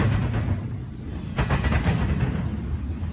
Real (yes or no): yes